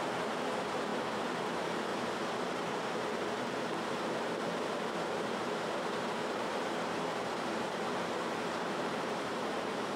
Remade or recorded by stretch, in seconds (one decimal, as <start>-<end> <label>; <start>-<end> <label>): 0.0-1.9 remade; 1.9-2.7 recorded; 2.7-10.0 remade